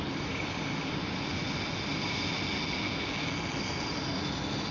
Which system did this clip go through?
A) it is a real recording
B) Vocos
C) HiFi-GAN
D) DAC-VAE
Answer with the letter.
A